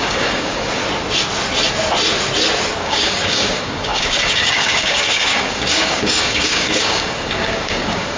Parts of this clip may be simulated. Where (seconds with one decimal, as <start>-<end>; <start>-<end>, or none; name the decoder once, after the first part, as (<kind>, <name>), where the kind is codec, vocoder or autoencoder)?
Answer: 0.0-0.8 (codec, DAC); 2.8-8.2